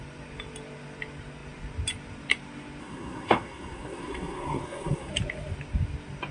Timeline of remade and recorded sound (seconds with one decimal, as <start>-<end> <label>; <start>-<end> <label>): 0.0-2.8 recorded; 2.8-5.1 remade; 5.1-6.3 recorded